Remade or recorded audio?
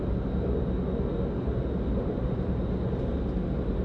recorded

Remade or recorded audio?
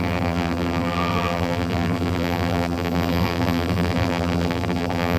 remade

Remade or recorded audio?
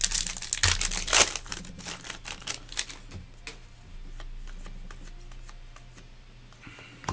recorded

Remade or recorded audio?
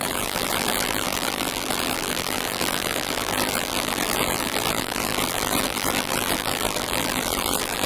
remade